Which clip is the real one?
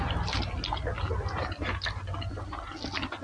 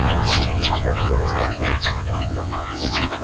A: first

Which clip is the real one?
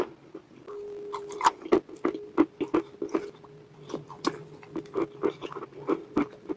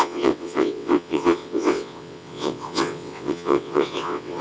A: first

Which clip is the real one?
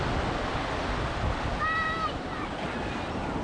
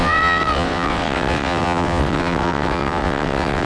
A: first